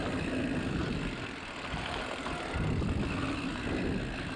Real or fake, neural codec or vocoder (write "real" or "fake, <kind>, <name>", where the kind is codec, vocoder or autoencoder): real